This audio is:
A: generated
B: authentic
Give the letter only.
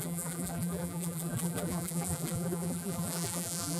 A